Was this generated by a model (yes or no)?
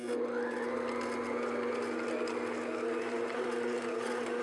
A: no